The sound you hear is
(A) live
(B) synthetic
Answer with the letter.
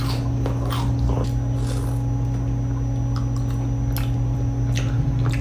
A